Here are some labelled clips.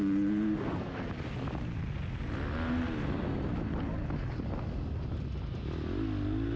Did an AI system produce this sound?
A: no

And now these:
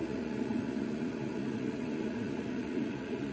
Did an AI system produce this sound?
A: yes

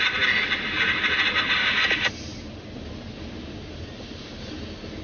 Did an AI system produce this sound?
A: no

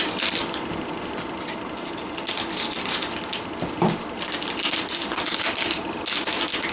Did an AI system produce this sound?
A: no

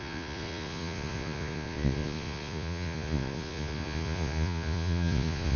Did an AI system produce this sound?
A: yes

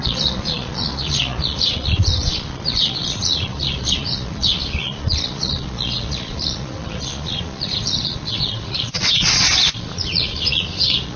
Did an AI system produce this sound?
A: yes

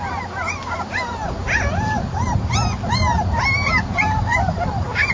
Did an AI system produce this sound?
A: no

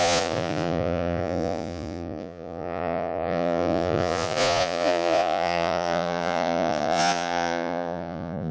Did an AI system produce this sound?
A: yes